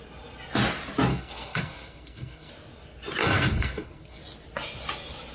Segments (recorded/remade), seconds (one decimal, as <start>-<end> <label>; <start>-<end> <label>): 0.0-1.1 recorded; 1.1-2.5 remade; 2.5-3.2 recorded; 3.2-4.2 remade; 4.2-5.3 recorded